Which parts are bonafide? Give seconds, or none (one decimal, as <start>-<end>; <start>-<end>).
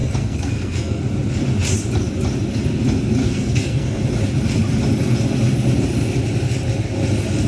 1.0-3.2; 4.0-7.5